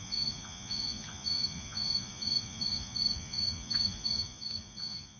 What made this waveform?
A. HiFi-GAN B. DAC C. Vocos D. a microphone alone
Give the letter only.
C